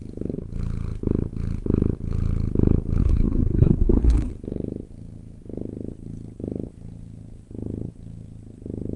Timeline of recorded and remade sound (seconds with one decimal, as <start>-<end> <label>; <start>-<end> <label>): 0.0-3.0 recorded; 3.0-4.3 remade; 4.3-9.0 recorded